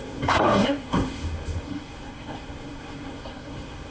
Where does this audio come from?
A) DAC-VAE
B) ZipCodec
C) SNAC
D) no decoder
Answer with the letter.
C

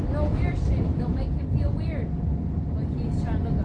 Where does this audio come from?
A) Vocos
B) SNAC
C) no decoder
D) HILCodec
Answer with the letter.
C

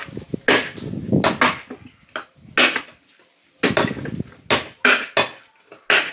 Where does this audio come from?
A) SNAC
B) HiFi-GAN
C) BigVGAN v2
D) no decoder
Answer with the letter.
D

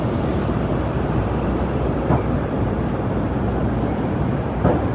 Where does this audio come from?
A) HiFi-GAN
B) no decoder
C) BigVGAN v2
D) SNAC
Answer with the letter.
C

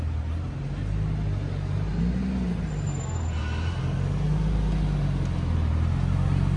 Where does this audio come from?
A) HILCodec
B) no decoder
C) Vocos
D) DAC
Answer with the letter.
B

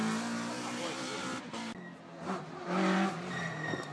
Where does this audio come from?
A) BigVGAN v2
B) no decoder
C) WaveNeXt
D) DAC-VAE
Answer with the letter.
B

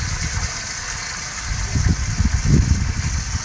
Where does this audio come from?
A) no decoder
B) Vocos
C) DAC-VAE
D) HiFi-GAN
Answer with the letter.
A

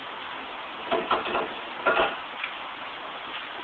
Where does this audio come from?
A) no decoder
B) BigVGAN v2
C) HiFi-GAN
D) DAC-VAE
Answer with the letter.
A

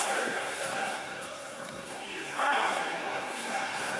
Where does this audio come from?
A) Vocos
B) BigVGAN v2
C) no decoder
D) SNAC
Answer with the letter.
D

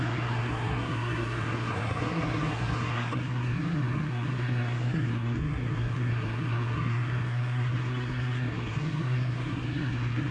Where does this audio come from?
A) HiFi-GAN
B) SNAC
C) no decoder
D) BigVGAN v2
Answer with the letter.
B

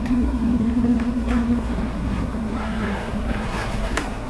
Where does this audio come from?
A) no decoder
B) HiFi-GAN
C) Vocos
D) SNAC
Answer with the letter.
D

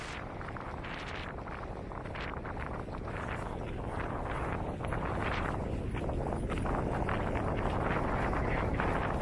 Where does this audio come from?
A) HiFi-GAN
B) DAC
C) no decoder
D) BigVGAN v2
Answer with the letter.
C